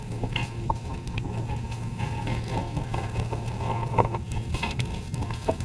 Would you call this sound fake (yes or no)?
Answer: yes